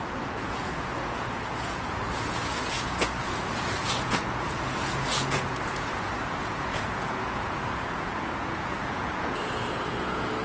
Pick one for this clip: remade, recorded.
remade